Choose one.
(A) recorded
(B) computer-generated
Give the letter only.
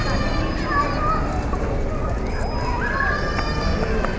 A